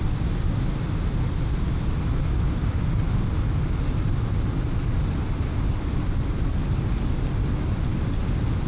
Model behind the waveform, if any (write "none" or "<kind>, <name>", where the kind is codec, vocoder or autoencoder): none